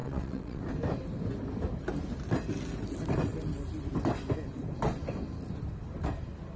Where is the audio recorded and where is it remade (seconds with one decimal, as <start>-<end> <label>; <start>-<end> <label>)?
0.0-0.6 remade; 0.6-6.6 recorded